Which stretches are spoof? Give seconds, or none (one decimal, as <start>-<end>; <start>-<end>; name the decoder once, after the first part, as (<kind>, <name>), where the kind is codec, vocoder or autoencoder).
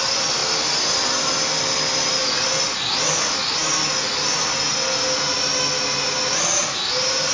none